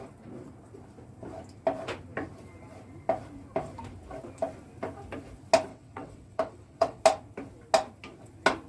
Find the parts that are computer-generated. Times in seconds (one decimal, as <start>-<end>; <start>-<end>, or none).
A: 5.7-7.0